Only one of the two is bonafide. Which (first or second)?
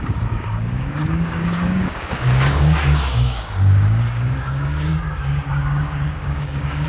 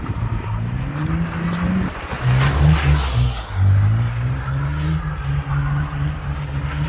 second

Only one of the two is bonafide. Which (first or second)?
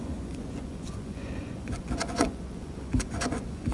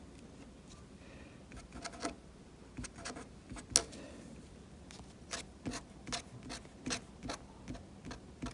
second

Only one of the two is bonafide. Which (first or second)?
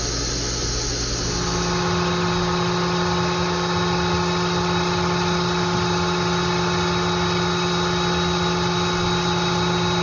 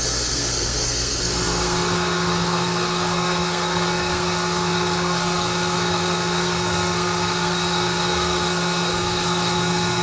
first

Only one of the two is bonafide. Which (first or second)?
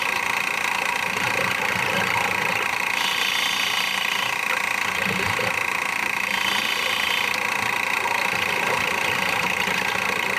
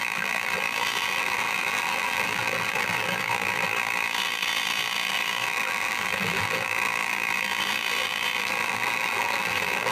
first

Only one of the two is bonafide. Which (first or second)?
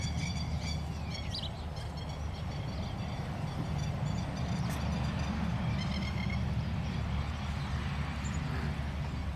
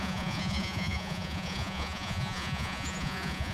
first